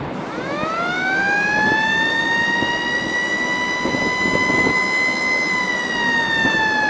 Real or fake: real